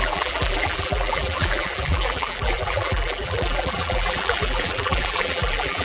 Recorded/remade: remade